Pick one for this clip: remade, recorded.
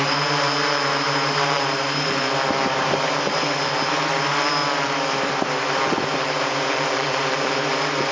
remade